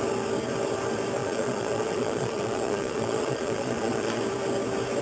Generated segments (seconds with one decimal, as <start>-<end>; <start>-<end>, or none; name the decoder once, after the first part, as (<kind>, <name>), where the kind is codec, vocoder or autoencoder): 1.2-4.2 (vocoder, Vocos)